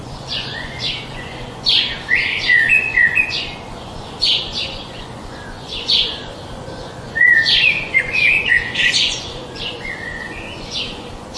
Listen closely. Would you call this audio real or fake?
fake